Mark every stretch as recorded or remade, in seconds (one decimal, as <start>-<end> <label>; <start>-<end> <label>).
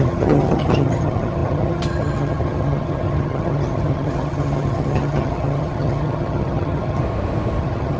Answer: 0.0-7.0 remade; 7.0-7.6 recorded; 7.6-8.0 remade